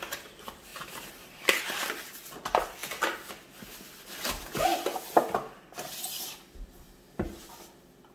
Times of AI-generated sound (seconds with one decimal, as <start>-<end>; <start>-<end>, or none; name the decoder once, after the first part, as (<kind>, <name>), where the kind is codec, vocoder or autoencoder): 0.7-1.6 (vocoder, BigVGAN v2)